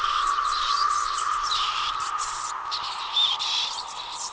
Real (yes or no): yes